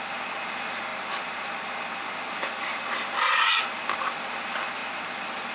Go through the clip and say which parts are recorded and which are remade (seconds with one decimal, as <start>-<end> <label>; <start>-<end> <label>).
0.0-5.5 recorded